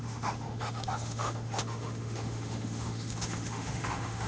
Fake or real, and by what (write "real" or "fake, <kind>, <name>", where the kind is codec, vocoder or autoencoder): fake, autoencoder, DAC-VAE